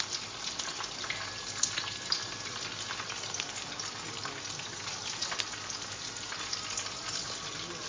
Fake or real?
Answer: real